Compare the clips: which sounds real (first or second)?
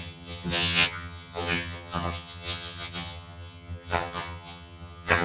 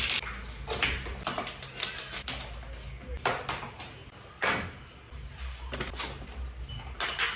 second